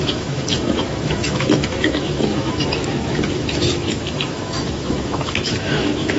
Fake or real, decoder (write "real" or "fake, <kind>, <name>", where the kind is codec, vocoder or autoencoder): fake, autoencoder, DAC-VAE